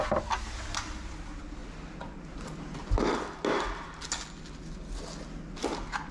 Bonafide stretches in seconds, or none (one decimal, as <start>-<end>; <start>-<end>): 0.0-6.1